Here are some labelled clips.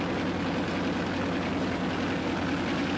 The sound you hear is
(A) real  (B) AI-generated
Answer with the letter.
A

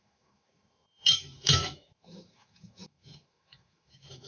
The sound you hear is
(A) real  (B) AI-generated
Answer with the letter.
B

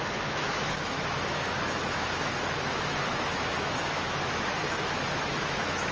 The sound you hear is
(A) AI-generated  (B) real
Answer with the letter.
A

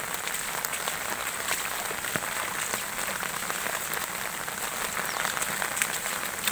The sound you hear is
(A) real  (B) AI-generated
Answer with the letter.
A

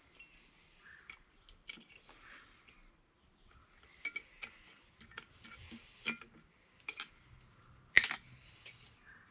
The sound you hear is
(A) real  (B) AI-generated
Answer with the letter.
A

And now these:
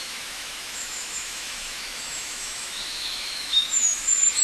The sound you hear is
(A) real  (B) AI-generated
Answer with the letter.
B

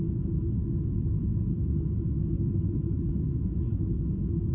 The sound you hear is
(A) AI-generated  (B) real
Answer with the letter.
A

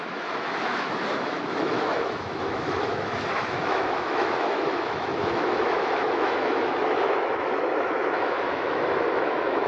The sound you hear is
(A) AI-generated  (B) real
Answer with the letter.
A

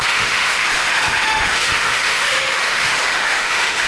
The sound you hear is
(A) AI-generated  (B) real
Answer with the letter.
A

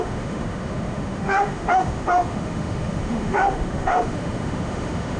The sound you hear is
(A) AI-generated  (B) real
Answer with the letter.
A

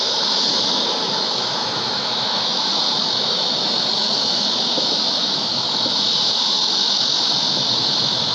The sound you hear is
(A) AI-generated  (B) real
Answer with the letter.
A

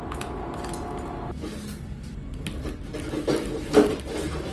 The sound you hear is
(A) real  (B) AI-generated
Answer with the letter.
A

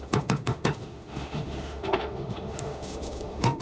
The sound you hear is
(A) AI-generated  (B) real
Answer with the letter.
A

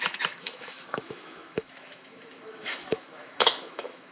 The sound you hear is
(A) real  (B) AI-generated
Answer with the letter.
B